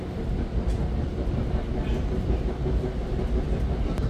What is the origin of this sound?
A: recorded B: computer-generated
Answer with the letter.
A